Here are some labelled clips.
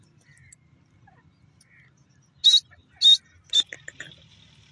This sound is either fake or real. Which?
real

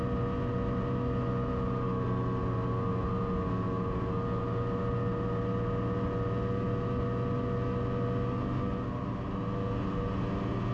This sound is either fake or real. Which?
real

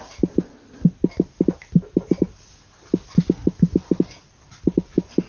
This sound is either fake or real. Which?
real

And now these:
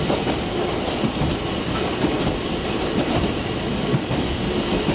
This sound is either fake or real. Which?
fake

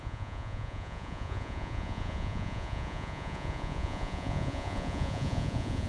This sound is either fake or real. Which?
fake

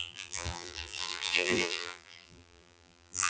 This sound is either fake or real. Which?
fake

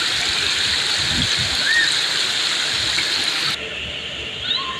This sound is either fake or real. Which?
real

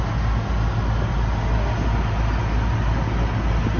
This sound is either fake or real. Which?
real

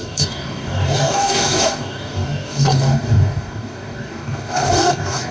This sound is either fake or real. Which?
fake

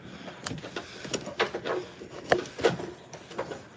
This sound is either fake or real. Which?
real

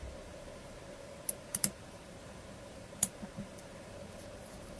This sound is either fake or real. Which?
fake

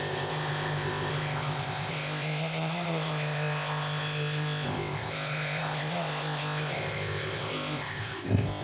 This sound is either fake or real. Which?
fake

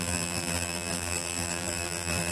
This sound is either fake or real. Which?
fake